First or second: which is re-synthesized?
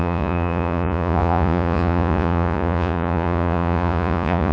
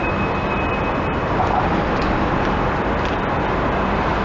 first